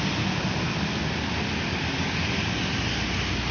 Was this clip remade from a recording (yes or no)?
no